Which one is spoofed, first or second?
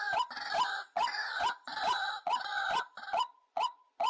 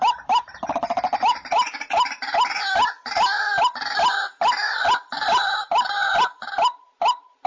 first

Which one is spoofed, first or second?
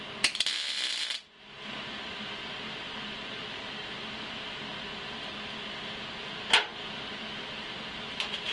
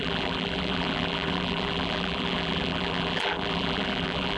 second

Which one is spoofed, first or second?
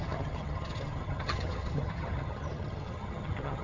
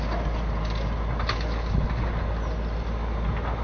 first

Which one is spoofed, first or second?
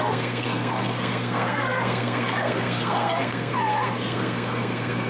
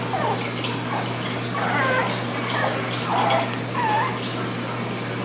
first